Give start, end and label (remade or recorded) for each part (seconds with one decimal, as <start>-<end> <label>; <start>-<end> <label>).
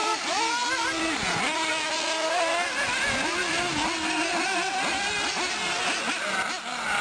0.0-7.0 recorded